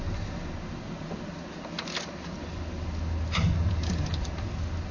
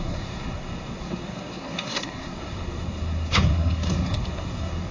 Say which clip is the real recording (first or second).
first